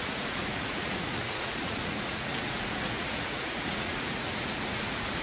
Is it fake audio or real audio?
fake